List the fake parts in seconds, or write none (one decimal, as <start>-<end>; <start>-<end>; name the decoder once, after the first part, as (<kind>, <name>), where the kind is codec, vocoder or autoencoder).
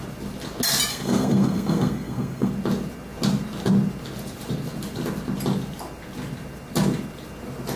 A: 0.9-2.5 (codec, SNAC)